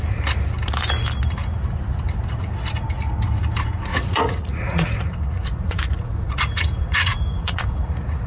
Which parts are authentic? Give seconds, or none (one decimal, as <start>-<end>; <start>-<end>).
0.0-3.9